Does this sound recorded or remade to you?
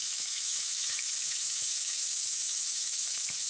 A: remade